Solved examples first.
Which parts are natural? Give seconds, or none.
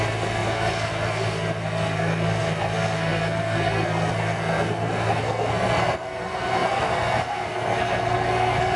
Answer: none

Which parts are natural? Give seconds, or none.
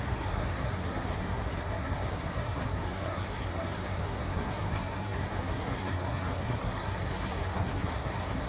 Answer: none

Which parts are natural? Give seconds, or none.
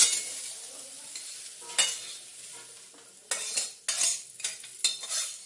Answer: 0.0-5.5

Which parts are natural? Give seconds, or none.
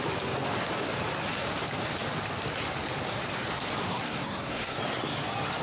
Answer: 0.0-3.8; 4.8-5.6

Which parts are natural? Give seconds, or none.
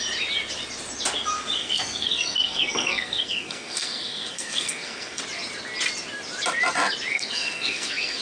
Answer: 0.0-1.6; 5.2-7.1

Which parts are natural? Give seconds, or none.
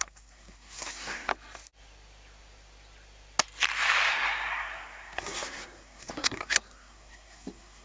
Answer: 1.3-4.1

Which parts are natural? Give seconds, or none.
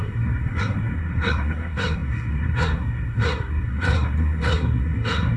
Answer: none